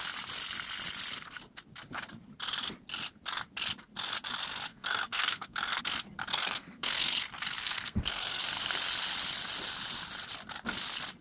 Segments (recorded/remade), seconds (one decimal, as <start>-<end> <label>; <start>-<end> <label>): 0.0-4.7 recorded; 4.7-5.8 remade; 5.8-6.3 recorded; 6.3-7.1 remade; 7.1-7.6 recorded; 7.6-8.4 remade; 8.4-11.2 recorded